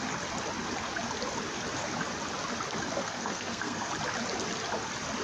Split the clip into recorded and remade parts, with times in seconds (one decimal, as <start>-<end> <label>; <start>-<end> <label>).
0.0-3.0 recorded; 3.0-3.9 remade; 3.9-5.2 recorded